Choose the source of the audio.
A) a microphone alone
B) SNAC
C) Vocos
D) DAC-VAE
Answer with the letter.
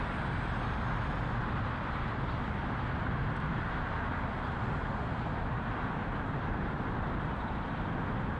A